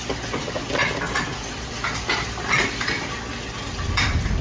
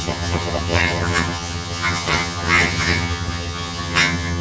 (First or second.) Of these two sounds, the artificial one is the second